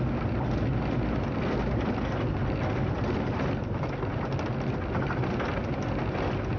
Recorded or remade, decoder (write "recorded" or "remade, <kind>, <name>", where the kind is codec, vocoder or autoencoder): recorded